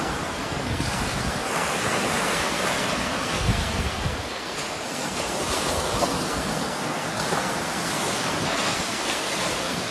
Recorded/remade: remade